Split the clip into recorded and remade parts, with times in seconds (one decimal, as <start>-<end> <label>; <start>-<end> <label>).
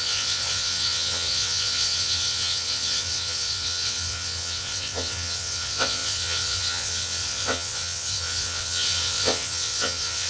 0.0-10.3 remade